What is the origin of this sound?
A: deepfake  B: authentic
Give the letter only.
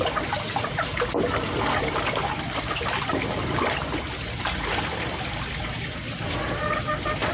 B